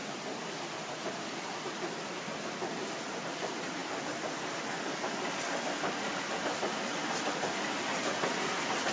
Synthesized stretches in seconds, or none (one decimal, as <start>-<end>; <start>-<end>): none